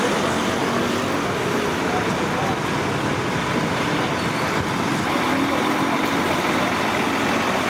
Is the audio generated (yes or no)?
no